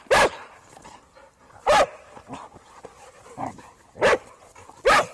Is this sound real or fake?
real